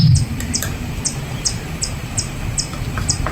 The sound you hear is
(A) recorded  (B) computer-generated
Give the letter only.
B